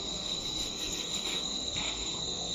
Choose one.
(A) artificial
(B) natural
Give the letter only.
A